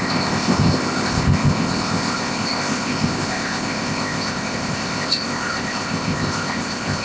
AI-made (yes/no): yes